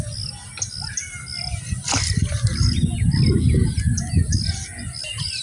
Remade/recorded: recorded